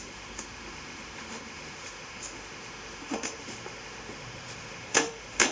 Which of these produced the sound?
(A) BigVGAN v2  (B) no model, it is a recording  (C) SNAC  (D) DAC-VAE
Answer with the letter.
D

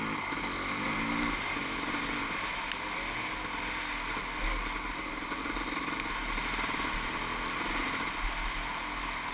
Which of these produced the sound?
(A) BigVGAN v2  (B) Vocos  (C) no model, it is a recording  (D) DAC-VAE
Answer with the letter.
C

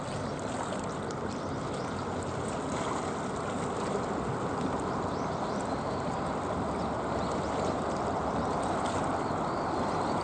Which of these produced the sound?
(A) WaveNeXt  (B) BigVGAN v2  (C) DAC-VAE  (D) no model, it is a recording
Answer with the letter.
D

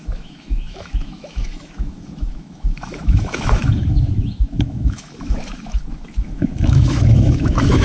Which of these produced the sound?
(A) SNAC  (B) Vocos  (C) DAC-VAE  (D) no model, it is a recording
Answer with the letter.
C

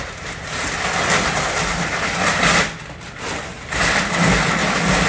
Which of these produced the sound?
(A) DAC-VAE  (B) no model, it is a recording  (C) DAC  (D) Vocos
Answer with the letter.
B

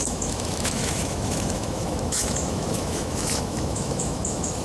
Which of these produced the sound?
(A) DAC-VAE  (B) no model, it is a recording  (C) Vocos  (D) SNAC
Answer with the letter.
A